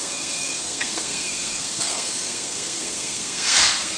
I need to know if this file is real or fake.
fake